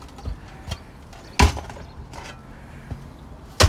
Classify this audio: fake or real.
real